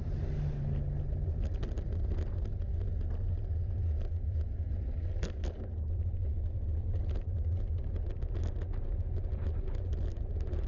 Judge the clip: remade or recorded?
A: recorded